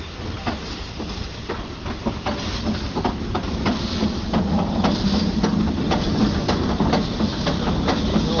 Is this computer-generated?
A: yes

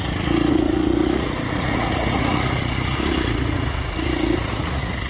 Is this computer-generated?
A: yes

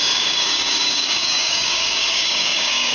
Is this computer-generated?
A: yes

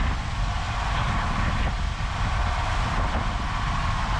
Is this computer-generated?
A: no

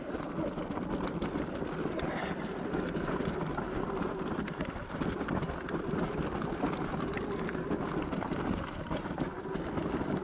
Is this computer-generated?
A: no